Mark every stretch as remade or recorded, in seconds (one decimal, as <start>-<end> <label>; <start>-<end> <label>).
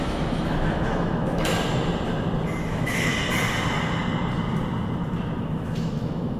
0.0-1.5 remade; 1.5-2.6 recorded; 2.6-3.1 remade; 3.1-5.4 recorded; 5.4-6.4 remade